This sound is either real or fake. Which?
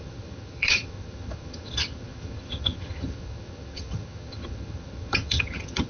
fake